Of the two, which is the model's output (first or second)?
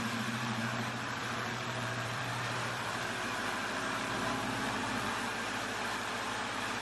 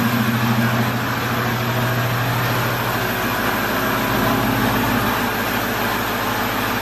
first